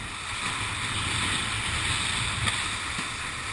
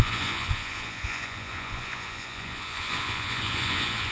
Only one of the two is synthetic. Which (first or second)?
second